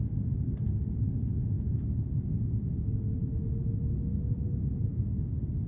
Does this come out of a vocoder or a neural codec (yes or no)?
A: no